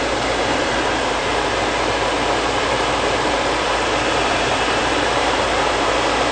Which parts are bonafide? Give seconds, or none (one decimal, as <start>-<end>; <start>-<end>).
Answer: 1.3-2.6